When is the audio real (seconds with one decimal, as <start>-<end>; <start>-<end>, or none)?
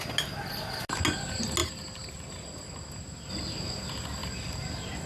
0.0-5.1